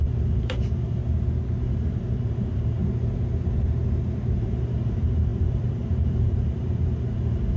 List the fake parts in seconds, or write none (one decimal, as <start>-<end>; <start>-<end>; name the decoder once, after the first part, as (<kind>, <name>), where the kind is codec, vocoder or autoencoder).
0.0-1.0 (vocoder, BigVGAN v2); 1.6-2.8; 4.4-7.6